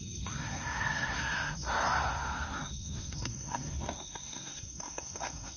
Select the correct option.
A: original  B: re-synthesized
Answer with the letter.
B